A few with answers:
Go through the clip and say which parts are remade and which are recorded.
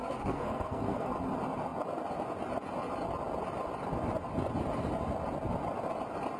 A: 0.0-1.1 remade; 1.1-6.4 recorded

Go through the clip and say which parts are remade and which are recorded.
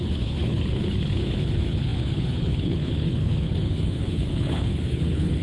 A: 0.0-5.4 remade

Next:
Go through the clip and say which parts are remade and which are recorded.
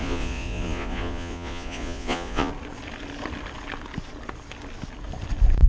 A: 0.0-2.5 remade; 2.5-5.7 recorded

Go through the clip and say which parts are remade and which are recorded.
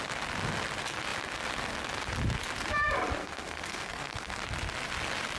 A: 0.0-3.2 recorded; 3.2-4.4 remade; 4.4-5.4 recorded